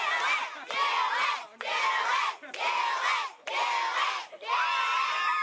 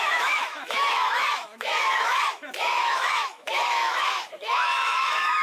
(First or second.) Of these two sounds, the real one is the first